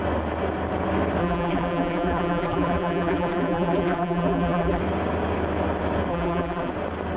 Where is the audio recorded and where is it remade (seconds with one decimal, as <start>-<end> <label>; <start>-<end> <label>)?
0.0-1.2 recorded; 1.2-4.8 remade; 4.8-6.1 recorded; 6.1-6.7 remade; 6.7-7.2 recorded